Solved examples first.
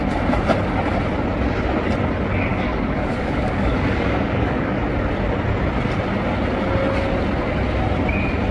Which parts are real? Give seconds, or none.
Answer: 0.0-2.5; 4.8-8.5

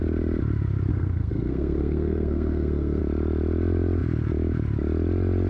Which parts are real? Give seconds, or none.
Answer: 0.0-0.9; 3.0-5.5

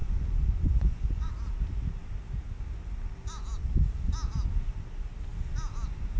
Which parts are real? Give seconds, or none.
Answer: 1.3-6.2